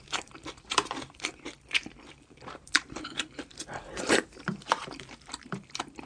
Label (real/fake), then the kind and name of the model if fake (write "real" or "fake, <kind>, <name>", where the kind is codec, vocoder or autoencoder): fake, vocoder, BigVGAN v2